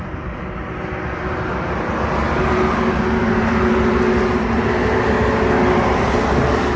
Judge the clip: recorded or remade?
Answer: recorded